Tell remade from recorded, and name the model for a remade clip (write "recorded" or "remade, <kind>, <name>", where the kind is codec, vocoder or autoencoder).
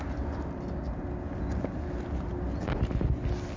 recorded